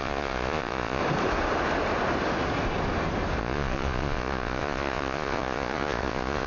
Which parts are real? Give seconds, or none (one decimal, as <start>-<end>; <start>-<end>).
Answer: 1.0-3.4